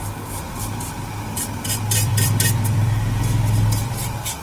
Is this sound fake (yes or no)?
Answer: yes